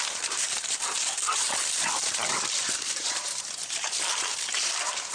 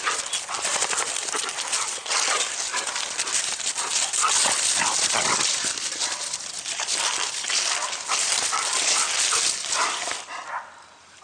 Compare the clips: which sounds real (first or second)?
second